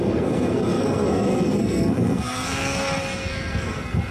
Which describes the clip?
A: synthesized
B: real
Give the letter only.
A